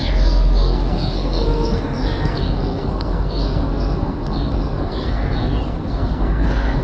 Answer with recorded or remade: remade